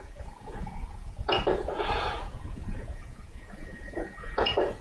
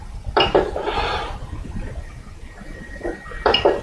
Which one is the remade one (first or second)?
first